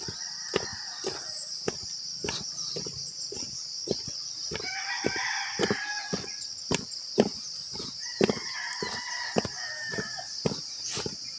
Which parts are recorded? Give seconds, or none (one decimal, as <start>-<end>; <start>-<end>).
0.0-11.4